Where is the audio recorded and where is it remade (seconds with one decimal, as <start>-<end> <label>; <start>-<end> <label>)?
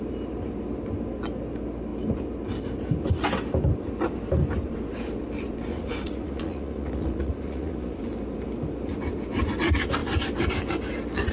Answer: 0.0-5.7 recorded; 5.7-8.0 remade; 8.0-11.3 recorded